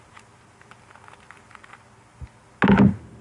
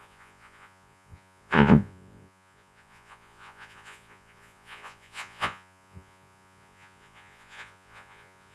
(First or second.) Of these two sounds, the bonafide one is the first